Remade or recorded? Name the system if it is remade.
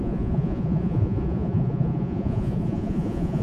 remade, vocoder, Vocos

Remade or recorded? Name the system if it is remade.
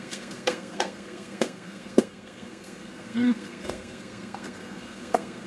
remade, codec, SNAC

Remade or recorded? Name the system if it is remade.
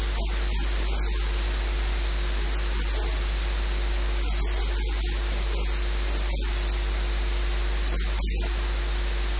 recorded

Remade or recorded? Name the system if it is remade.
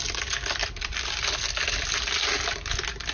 recorded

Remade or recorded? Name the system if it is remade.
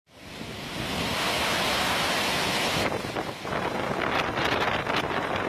remade, vocoder, BigVGAN v2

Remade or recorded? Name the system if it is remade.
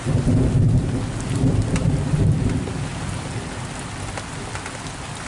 recorded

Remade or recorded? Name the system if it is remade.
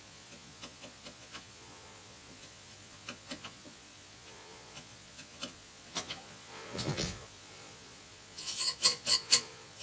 remade, vocoder, Vocos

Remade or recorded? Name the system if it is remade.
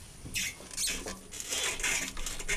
recorded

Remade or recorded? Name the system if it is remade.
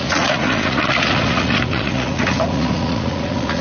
remade, vocoder, Vocos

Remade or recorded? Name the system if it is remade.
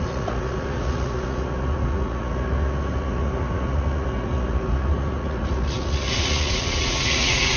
remade, vocoder, Vocos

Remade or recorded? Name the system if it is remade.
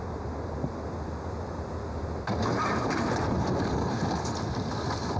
recorded